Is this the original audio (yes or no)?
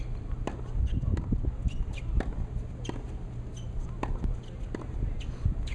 yes